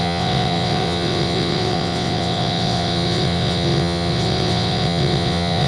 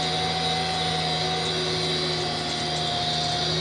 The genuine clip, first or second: second